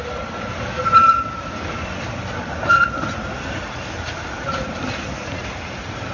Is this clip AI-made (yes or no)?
no